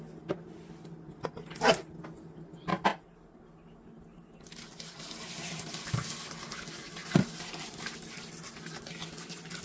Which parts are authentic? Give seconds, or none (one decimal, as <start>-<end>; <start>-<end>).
0.0-9.6